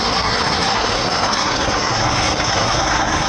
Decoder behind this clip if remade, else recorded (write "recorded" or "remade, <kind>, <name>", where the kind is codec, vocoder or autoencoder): remade, codec, SNAC